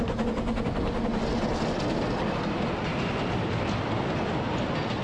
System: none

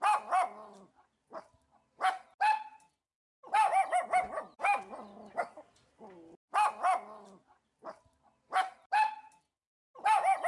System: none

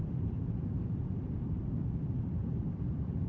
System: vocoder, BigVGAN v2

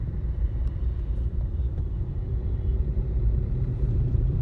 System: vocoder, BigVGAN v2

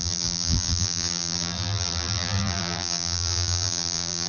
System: vocoder, BigVGAN v2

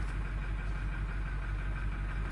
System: none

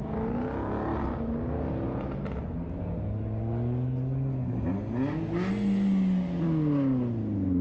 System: none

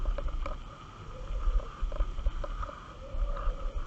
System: none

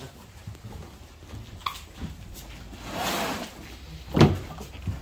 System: none